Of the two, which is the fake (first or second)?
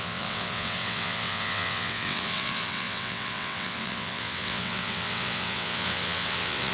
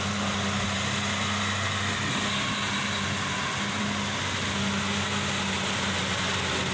first